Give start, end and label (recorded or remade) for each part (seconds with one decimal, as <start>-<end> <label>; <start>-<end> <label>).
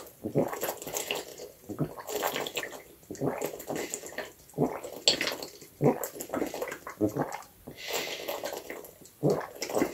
0.0-1.3 recorded; 1.3-2.6 remade; 2.6-9.9 recorded